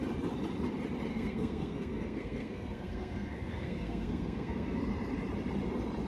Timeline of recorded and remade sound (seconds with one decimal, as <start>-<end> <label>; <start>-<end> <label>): 0.0-1.1 recorded; 1.1-4.8 remade; 4.8-6.1 recorded